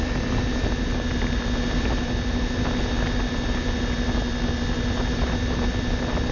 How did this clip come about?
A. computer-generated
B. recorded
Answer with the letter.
B